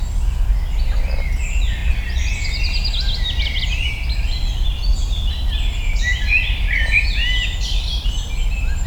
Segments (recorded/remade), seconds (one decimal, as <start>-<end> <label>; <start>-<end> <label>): 0.0-8.9 recorded